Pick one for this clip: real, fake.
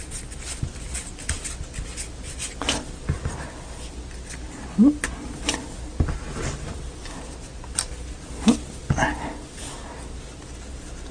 real